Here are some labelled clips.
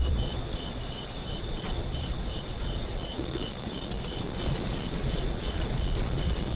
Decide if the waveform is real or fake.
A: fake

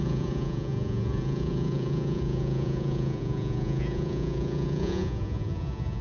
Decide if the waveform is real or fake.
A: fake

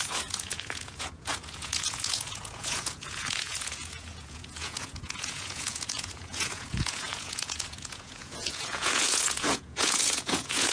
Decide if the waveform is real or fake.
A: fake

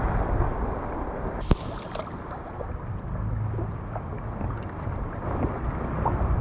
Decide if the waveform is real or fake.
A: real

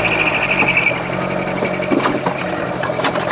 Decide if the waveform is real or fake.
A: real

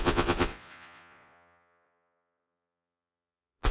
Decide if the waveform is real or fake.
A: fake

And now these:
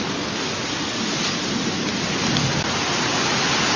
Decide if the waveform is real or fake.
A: real